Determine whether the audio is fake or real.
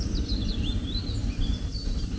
real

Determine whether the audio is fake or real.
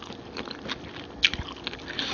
real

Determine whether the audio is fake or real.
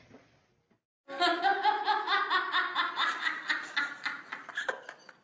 real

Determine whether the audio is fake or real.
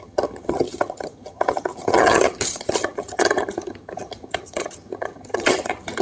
fake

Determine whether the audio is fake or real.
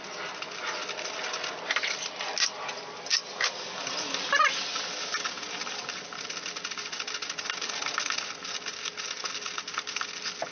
real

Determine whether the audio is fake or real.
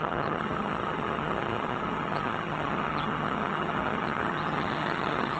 fake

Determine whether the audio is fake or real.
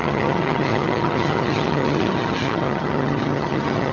fake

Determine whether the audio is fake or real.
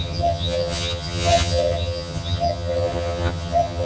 fake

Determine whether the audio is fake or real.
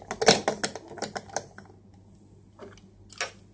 real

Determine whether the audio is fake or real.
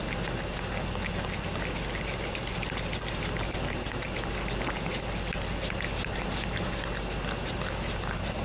real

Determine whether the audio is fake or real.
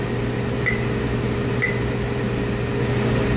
real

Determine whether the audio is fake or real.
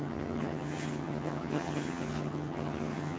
fake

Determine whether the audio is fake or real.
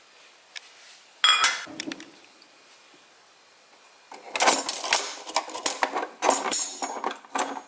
real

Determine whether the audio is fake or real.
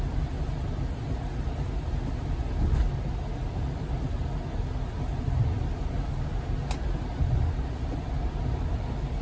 real